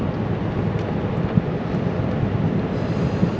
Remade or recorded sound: recorded